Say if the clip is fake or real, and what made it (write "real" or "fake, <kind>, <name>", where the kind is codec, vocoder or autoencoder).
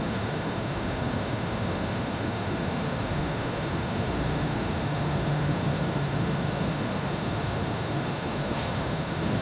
fake, autoencoder, DAC-VAE